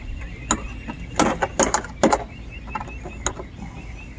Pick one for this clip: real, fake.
real